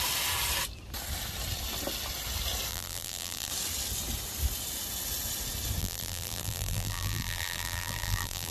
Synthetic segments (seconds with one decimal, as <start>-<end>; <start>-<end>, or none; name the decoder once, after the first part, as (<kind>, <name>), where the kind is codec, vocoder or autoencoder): 2.7-3.5 (vocoder, BigVGAN v2); 5.8-8.5